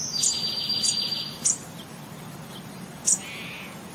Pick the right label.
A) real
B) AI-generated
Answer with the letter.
A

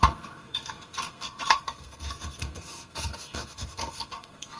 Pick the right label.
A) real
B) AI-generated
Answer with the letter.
B